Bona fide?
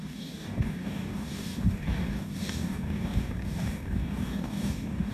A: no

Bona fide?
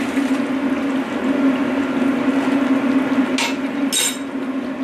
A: yes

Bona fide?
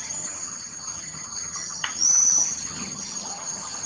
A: no